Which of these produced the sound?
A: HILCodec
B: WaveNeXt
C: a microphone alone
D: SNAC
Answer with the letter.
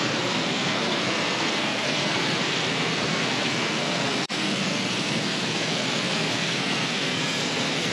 D